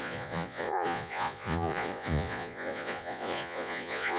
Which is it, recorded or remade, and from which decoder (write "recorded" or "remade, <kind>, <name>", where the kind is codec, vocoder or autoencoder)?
remade, vocoder, Vocos